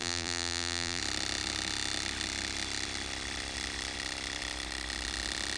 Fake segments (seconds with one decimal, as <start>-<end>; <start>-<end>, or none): 0.0-1.0